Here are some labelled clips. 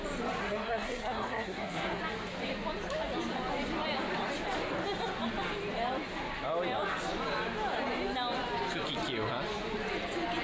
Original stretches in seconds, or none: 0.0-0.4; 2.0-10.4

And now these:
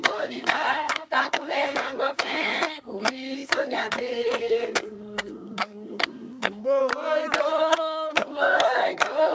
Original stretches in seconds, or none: 6.8-7.4

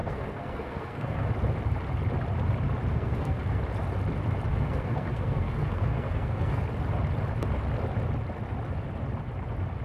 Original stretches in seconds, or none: 1.3-2.9; 3.6-4.5; 6.6-9.8